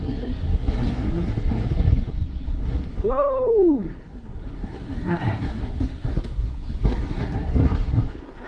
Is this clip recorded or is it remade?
remade